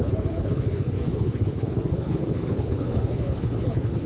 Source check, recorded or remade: remade